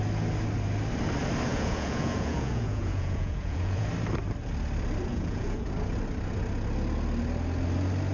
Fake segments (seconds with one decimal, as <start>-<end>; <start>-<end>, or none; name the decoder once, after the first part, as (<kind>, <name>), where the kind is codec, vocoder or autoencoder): 1.5-3.9 (vocoder, Vocos); 5.1-5.7